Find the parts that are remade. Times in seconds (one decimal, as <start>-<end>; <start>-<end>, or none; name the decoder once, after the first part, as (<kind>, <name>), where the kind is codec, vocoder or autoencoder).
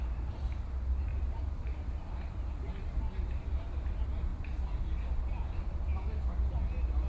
0.0-0.6 (vocoder, BigVGAN v2); 1.1-2.7